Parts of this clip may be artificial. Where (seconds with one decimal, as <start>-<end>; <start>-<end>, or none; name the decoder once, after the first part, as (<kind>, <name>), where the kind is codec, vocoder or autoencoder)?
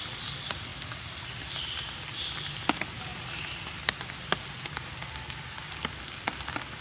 none